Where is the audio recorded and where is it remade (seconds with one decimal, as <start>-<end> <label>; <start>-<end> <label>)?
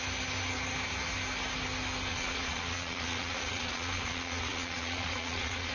0.0-2.1 recorded; 2.1-5.7 remade